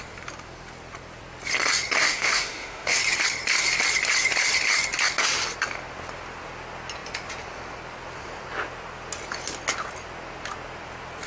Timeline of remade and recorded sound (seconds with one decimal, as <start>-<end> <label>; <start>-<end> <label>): 0.0-2.0 recorded; 2.0-3.0 remade; 3.0-11.3 recorded